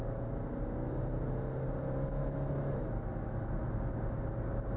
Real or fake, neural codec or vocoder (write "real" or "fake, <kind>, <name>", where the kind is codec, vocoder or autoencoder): real